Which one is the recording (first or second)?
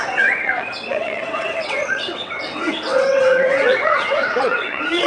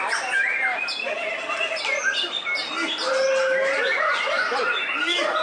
second